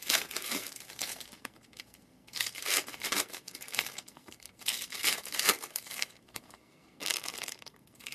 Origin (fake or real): fake